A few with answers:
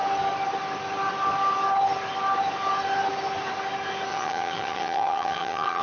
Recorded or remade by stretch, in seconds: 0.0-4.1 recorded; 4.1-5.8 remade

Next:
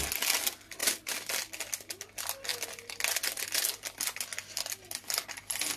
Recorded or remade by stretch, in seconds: 0.0-5.8 recorded

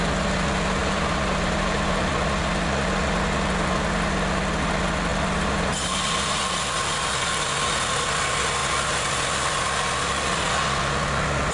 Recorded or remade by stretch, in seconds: 0.0-0.8 recorded; 0.8-2.1 remade; 2.1-5.1 recorded; 5.1-6.4 remade; 6.4-11.5 recorded

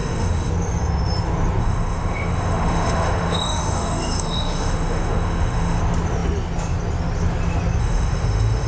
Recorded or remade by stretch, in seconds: 0.0-0.5 remade; 0.5-1.6 recorded; 1.6-5.8 remade; 5.8-7.8 recorded; 7.8-8.7 remade

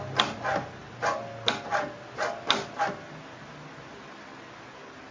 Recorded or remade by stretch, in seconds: 0.0-5.1 recorded

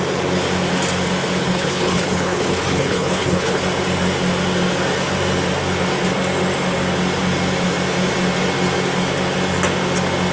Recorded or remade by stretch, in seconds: 0.0-1.4 recorded; 1.4-3.6 remade; 3.6-10.3 recorded

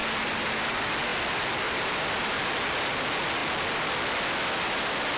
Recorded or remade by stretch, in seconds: 0.0-5.2 recorded

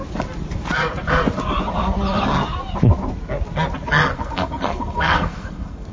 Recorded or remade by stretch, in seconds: 0.0-4.1 recorded; 4.1-5.9 remade